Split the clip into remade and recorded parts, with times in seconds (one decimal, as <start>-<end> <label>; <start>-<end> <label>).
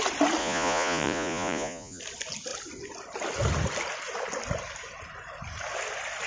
0.0-0.4 recorded; 0.4-2.0 remade; 2.0-6.3 recorded